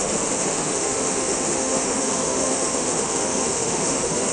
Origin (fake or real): fake